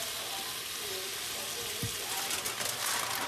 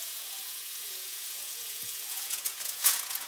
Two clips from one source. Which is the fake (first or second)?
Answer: second